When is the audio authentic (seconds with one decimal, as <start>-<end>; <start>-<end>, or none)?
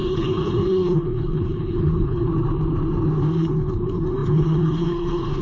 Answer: 2.3-3.4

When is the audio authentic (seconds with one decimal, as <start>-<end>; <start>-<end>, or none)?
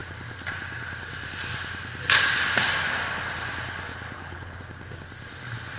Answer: 0.0-3.9; 4.6-5.8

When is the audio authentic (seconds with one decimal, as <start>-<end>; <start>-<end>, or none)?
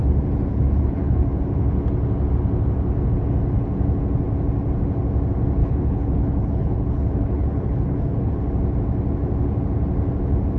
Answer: 0.0-0.5; 1.4-5.6; 8.3-10.6